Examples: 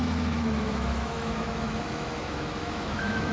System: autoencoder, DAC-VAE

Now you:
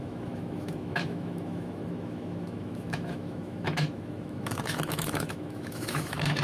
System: autoencoder, DAC-VAE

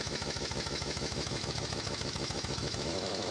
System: autoencoder, DAC-VAE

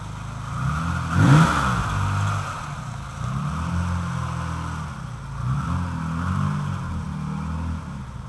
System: none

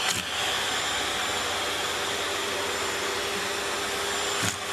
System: none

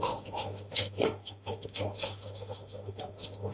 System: autoencoder, DAC-VAE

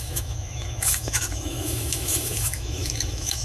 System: autoencoder, DAC-VAE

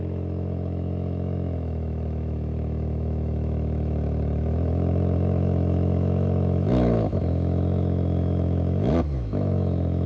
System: autoencoder, DAC-VAE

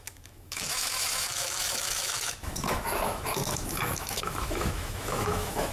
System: autoencoder, DAC-VAE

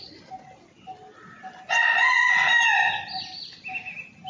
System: none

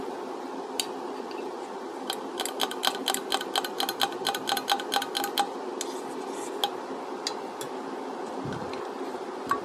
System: none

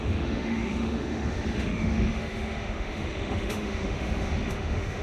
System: autoencoder, DAC-VAE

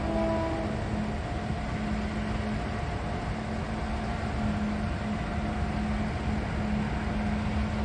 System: none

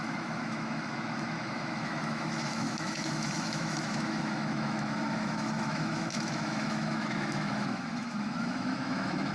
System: autoencoder, DAC-VAE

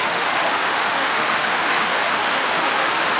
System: autoencoder, DAC-VAE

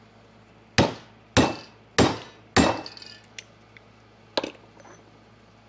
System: none